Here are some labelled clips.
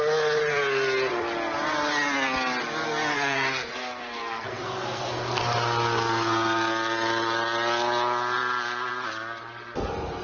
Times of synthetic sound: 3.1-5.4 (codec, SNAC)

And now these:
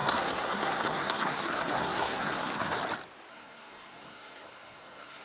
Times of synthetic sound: 0.0-2.8 (codec, SNAC); 3.3-5.2

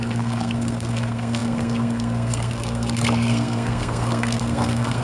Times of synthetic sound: 0.0-5.0 (codec, SNAC)